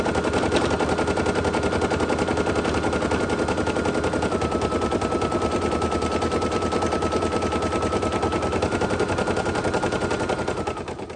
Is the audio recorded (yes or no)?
yes